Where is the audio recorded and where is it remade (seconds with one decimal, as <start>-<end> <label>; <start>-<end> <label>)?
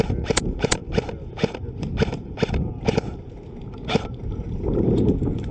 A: 0.0-0.8 remade; 0.8-2.8 recorded; 2.8-5.5 remade